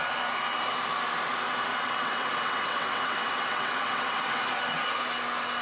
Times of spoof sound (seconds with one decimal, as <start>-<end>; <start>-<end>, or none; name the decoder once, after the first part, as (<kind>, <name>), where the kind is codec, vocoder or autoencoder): 1.7-4.4 (vocoder, WaveNeXt)

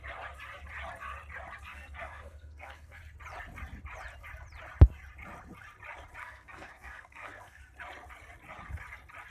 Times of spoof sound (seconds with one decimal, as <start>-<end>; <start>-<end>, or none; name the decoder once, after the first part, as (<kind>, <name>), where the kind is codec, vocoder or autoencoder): 1.7-3.0 (codec, SNAC); 6.2-7.6

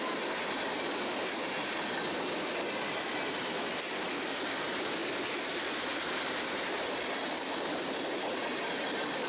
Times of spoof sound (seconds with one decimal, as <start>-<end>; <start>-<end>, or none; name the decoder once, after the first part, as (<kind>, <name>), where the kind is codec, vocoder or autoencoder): none

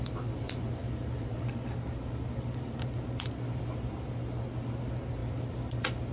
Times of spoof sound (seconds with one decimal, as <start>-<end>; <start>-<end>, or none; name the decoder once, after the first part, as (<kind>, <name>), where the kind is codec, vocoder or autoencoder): 0.8-3.3 (vocoder, BigVGAN v2); 5.2-6.1

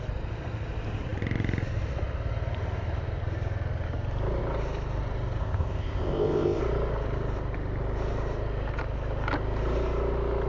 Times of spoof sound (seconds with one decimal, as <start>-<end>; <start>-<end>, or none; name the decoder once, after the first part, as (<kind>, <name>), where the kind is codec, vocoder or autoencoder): 5.4-6.6 (codec, ZipCodec)

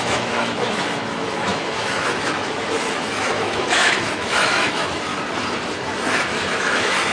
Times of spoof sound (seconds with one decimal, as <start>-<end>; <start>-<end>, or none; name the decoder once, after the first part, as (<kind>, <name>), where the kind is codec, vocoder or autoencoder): 0.0-5.1 (autoencoder, DAC-VAE); 6.2-7.1

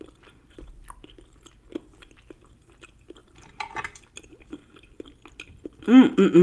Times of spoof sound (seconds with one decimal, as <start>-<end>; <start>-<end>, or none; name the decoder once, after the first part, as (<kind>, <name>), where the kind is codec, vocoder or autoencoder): none